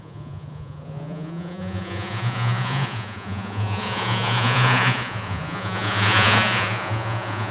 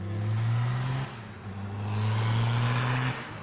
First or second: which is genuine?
second